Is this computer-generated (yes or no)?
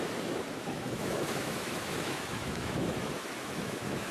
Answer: yes